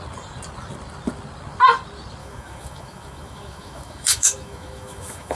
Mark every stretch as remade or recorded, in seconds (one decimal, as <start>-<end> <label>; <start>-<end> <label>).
0.0-2.2 recorded; 2.2-5.4 remade